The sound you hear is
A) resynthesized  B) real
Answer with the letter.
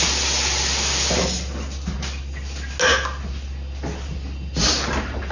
B